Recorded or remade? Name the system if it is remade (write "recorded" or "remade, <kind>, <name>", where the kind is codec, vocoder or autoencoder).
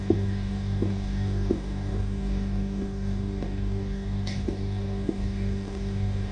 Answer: remade, codec, DAC